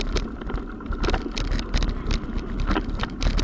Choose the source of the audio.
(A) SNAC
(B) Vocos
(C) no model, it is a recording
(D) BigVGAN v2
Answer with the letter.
C